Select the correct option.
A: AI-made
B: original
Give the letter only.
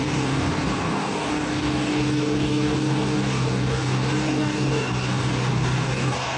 A